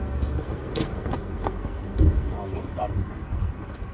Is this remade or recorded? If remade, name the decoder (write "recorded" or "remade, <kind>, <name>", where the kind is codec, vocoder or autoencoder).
remade, codec, SNAC